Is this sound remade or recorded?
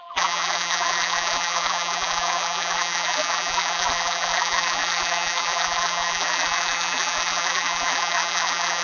remade